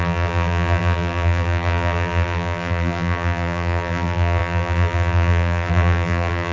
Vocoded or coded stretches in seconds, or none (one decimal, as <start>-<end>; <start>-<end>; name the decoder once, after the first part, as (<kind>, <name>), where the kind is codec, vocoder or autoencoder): 0.0-6.5 (vocoder, BigVGAN v2)